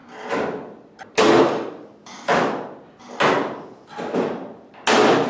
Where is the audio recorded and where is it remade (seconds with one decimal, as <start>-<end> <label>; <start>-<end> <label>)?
0.0-5.3 recorded